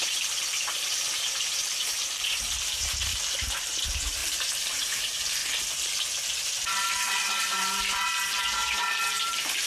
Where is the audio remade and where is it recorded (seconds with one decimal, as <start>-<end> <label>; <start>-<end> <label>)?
0.0-5.4 remade; 5.4-8.4 recorded; 8.4-9.7 remade